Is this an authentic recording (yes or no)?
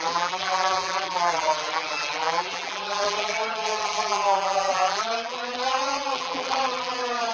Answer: no